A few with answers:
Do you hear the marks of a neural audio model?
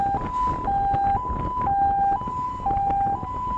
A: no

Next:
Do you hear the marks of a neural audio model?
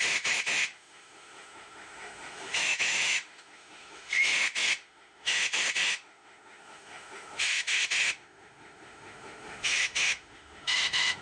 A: yes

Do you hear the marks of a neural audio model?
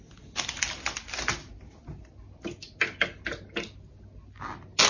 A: no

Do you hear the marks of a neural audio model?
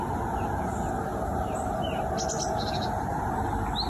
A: no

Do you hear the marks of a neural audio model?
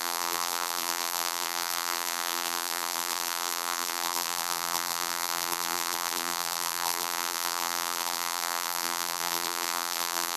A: yes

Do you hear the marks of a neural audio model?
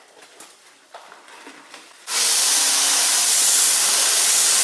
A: no